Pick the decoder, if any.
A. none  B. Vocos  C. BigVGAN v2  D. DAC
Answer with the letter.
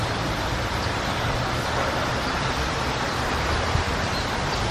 C